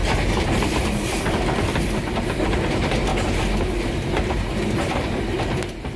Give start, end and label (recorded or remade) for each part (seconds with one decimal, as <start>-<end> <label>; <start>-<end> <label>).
0.0-3.1 remade; 3.1-6.0 recorded